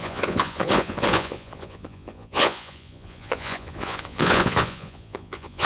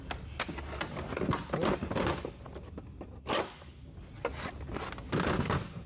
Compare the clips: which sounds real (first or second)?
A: second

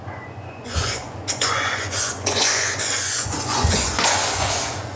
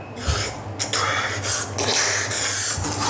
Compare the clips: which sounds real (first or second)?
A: second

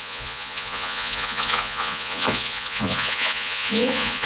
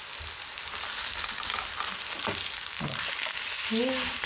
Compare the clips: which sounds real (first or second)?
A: second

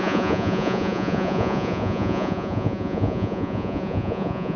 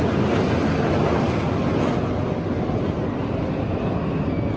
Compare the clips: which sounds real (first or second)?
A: second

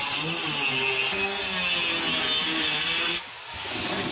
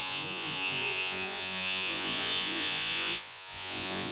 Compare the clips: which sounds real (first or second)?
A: first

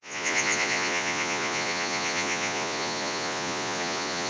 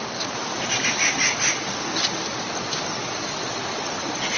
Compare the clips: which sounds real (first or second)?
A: second